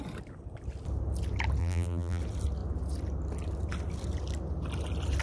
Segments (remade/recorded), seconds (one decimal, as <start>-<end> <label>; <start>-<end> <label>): 0.0-1.6 recorded; 1.6-2.2 remade; 2.2-5.2 recorded